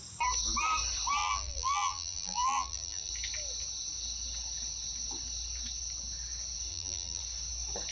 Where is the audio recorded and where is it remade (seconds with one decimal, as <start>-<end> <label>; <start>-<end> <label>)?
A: 0.0-1.2 recorded; 1.2-3.1 remade; 3.1-6.7 recorded; 6.7-7.2 remade; 7.2-7.9 recorded